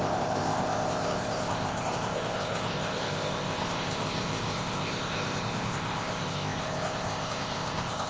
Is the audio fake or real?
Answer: fake